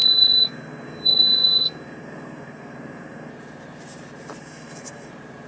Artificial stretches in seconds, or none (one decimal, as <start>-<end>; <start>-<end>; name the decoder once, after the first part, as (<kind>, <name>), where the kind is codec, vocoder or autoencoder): 0.0-3.3 (codec, SNAC); 4.4-5.1